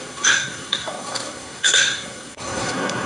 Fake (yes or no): yes